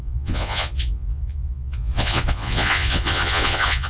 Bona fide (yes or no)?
no